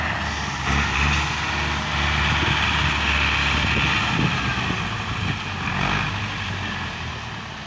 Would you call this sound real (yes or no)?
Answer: yes